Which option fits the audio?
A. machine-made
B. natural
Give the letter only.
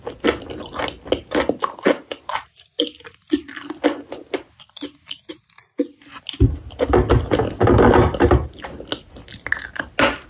B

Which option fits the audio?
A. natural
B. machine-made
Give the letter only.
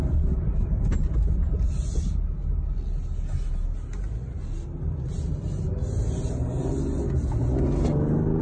A